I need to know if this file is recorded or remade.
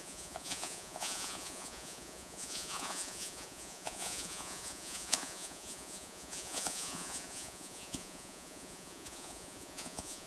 remade